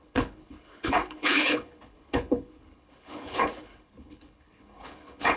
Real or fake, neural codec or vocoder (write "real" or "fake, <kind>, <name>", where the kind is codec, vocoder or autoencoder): fake, codec, HILCodec